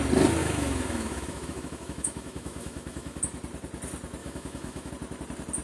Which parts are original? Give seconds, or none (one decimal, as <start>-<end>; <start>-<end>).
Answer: 0.0-0.4; 3.2-4.2; 4.9-5.6